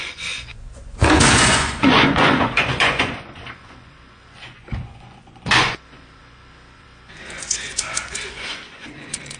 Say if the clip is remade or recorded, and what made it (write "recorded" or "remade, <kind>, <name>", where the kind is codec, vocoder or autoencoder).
remade, vocoder, Vocos